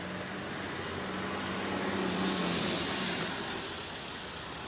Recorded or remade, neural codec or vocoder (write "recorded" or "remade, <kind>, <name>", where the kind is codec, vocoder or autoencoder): recorded